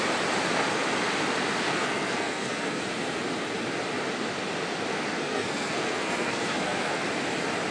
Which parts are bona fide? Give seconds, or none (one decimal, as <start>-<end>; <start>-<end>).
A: 0.0-1.7; 2.8-4.9; 7.1-7.7